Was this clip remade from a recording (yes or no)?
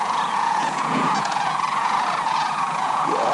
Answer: yes